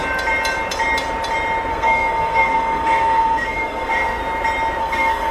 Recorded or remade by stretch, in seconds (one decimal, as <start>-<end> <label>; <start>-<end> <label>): 0.0-1.7 recorded; 1.7-4.2 remade; 4.2-4.8 recorded; 4.8-5.3 remade